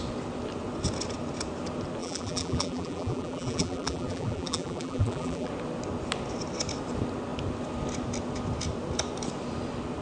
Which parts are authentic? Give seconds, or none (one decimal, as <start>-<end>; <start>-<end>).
0.0-2.0; 5.5-10.0